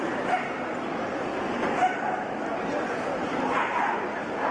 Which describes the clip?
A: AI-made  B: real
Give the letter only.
B